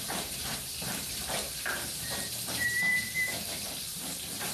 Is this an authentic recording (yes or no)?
no